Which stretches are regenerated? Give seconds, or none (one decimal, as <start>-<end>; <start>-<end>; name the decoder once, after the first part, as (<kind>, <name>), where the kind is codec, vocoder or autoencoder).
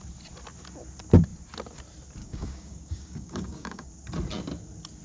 2.2-3.9 (codec, DAC)